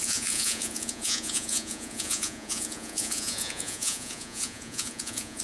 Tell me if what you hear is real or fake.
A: fake